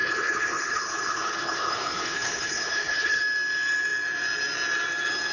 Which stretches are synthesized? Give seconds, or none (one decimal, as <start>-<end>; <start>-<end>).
0.0-3.2